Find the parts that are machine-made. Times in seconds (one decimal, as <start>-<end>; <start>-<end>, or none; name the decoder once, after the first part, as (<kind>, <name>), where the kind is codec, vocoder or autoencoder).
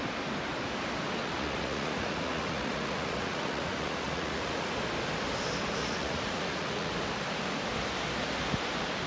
1.2-4.7 (vocoder, Vocos); 5.8-6.9